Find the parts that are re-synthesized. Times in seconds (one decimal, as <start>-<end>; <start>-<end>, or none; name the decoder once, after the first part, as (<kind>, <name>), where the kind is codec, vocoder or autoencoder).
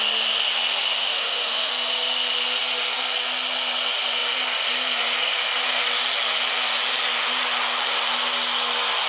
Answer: 1.0-1.7 (autoencoder, DAC-VAE)